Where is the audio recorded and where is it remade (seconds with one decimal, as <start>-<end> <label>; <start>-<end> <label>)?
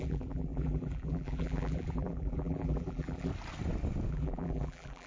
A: 0.0-3.3 remade; 3.3-4.1 recorded; 4.1-5.1 remade